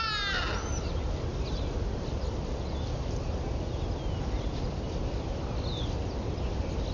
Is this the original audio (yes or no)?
yes